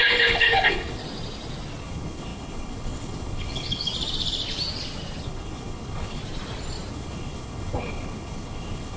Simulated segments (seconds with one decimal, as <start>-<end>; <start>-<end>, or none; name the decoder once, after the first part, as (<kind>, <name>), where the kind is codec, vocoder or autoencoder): 0.0-1.0 (codec, HILCodec); 1.8-3.9; 5.2-6.2; 6.9-9.0